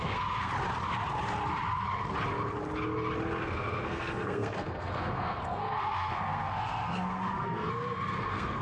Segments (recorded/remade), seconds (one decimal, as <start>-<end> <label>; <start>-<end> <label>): 0.0-0.5 remade; 0.5-3.4 recorded; 3.4-8.6 remade